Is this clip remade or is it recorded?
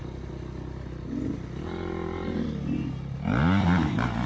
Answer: recorded